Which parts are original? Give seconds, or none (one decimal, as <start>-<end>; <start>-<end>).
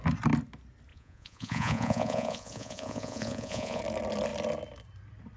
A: 0.0-0.9; 3.8-5.4